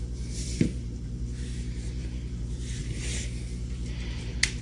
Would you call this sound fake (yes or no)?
yes